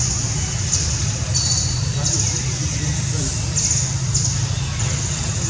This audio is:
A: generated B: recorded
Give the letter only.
B